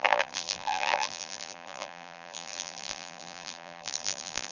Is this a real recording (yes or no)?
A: no